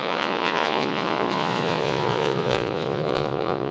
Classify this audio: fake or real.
fake